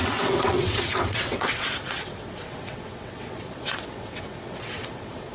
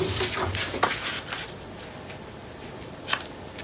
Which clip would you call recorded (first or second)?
second